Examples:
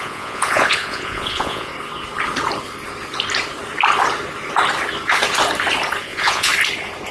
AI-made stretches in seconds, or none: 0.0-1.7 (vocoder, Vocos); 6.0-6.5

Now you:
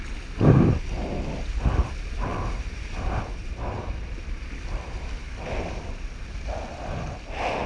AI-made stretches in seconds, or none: none

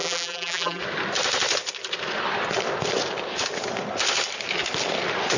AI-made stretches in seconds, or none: 0.0-0.8 (vocoder, BigVGAN v2)

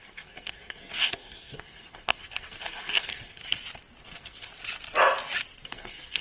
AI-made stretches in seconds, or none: 0.0-3.4 (codec, SNAC); 4.0-4.5; 5.7-6.2

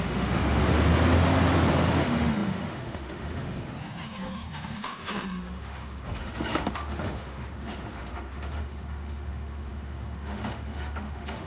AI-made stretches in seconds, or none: 0.0-0.6 (autoencoder, DAC-VAE); 1.7-11.5

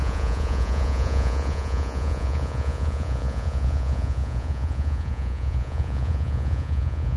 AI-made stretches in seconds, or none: 0.0-7.2 (vocoder, Vocos)

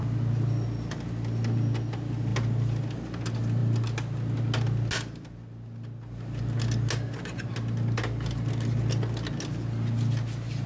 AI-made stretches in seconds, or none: none

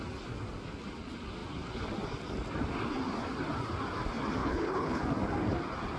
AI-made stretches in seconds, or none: 4.4-5.0 (codec, HILCodec)